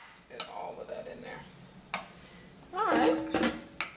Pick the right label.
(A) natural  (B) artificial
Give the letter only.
A